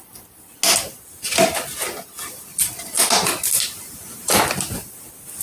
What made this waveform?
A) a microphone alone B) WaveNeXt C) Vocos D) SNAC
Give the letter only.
A